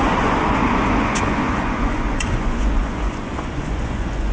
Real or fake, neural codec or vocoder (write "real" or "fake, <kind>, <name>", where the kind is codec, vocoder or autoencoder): fake, vocoder, Vocos